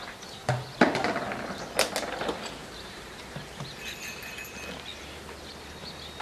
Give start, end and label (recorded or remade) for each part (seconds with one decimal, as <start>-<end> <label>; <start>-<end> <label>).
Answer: 0.0-2.6 recorded; 2.6-3.4 remade; 3.4-6.2 recorded

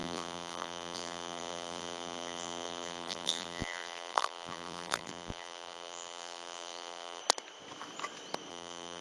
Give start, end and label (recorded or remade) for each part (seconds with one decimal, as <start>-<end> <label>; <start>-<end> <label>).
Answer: 0.0-7.2 remade; 7.2-8.5 recorded; 8.5-9.0 remade

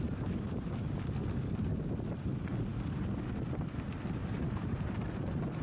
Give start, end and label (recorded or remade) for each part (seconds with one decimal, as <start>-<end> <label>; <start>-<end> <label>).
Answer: 0.0-4.2 recorded; 4.2-5.6 remade